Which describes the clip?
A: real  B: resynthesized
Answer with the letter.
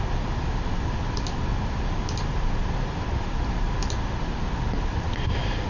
A